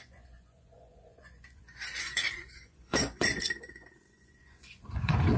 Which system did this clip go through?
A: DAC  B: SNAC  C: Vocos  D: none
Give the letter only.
C